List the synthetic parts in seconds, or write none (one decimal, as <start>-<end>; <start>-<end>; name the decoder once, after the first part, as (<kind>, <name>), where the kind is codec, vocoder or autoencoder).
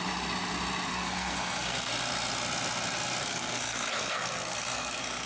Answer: 0.9-1.9 (codec, SNAC); 3.2-5.3